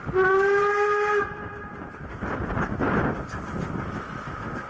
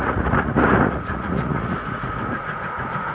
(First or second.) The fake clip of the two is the second